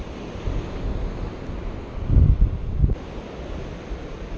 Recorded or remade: recorded